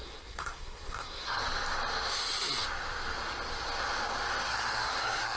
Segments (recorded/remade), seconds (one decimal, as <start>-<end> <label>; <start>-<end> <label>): 0.0-1.4 remade; 1.4-4.5 recorded; 4.5-5.4 remade